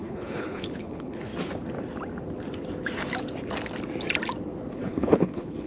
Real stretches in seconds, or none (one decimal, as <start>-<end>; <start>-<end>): 1.3-4.7